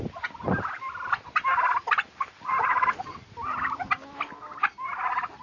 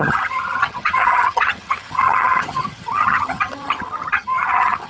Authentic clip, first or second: first